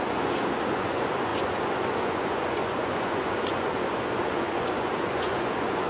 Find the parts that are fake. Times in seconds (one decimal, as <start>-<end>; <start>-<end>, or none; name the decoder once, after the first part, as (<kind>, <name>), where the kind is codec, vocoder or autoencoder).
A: 0.0-5.9 (vocoder, Vocos)